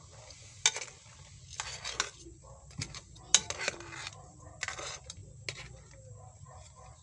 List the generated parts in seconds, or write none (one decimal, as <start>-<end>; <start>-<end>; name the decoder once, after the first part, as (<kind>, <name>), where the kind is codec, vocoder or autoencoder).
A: none